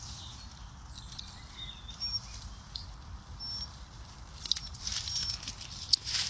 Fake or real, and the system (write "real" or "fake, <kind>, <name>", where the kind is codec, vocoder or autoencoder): real